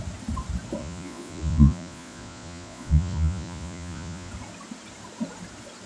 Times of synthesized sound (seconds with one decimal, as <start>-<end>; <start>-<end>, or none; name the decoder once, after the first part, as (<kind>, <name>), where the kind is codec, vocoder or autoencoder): 0.8-4.3 (vocoder, Vocos)

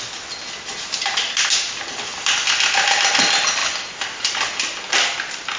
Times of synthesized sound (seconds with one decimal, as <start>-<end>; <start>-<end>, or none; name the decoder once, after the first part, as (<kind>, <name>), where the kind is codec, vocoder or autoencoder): none

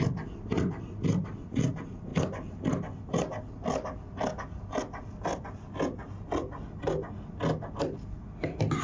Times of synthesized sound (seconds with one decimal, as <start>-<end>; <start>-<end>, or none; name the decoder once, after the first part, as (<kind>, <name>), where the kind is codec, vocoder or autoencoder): none

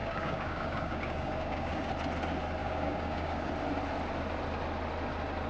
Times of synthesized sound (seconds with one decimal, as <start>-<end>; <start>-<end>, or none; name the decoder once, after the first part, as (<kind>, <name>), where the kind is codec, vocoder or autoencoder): 0.0-1.9 (codec, DAC); 2.6-3.5

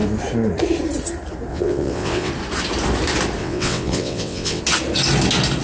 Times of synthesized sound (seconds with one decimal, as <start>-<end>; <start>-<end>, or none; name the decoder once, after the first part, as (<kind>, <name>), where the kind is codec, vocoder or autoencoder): 1.5-2.3 (vocoder, WaveNeXt); 3.4-4.6

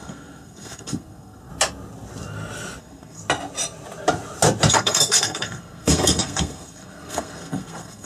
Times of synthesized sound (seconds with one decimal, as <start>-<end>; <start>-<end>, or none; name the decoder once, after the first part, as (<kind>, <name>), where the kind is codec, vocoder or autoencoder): 0.0-1.5 (codec, SNAC); 2.8-3.2; 4.7-8.1

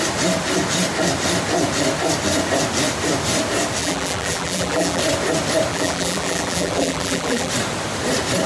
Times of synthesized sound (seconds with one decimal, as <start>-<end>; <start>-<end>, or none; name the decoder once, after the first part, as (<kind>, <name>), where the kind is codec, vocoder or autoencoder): 3.8-5.0 (vocoder, BigVGAN v2); 5.7-7.5

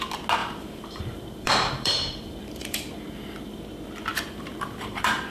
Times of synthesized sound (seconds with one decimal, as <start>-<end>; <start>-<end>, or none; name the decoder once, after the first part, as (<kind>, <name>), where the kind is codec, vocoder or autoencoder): 0.4-3.6 (vocoder, BigVGAN v2); 4.1-5.3